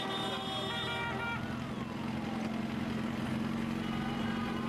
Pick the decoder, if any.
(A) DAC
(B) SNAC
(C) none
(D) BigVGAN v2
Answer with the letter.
C